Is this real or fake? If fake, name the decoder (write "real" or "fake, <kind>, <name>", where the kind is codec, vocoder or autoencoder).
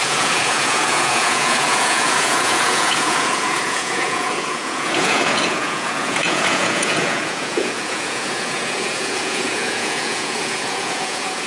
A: fake, vocoder, Vocos